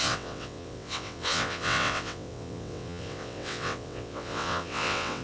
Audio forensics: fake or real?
fake